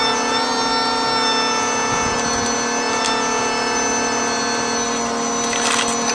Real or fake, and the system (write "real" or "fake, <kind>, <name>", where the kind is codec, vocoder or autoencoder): real